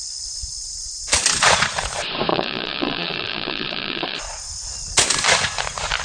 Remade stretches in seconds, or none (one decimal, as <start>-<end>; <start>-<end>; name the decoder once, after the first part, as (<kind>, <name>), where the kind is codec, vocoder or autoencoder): 1.3-1.9 (vocoder, Vocos); 2.3-4.4